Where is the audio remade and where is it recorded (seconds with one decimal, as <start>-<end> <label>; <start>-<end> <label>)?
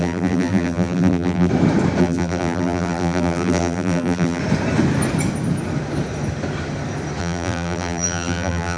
0.0-1.5 remade; 1.5-2.0 recorded; 2.0-4.4 remade; 4.4-7.2 recorded; 7.2-8.8 remade